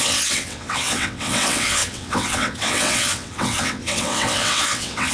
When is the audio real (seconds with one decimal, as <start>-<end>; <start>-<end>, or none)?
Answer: none